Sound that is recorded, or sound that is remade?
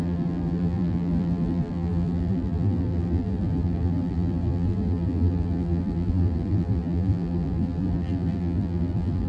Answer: remade